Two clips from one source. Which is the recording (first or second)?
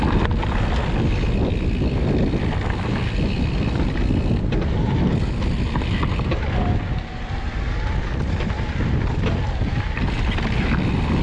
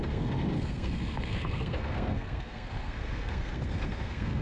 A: first